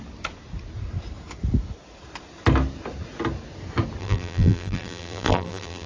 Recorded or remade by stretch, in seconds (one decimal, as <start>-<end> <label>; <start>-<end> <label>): 0.0-4.0 recorded; 4.0-5.9 remade